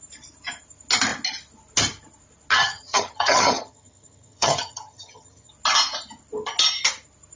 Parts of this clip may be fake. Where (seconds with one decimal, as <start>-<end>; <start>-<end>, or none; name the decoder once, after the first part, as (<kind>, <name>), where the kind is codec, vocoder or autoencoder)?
2.5-5.5 (vocoder, HiFi-GAN)